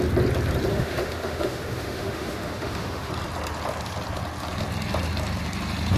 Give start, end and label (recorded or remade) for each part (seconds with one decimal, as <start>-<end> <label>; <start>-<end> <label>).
0.0-0.7 recorded; 0.7-3.1 remade; 3.1-6.0 recorded